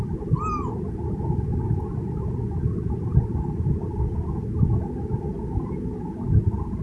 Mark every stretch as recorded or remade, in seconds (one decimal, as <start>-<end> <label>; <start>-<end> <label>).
0.0-6.8 recorded